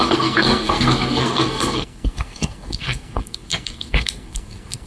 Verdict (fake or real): fake